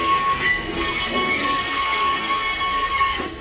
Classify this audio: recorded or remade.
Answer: remade